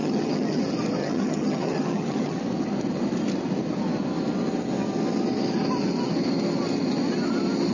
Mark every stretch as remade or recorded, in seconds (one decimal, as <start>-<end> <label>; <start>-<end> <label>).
0.0-0.6 remade; 0.6-1.0 recorded; 1.0-2.4 remade; 2.4-7.7 recorded